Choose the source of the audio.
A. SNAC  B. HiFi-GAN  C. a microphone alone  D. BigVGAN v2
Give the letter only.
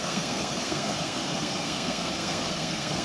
A